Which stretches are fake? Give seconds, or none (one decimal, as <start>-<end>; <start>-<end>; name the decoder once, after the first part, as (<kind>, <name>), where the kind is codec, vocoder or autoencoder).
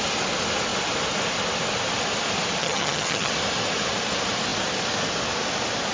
2.6-3.3 (vocoder, HiFi-GAN)